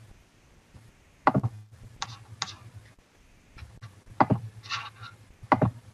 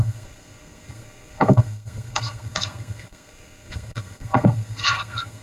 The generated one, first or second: second